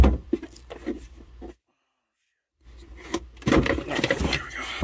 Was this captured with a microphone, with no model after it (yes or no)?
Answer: yes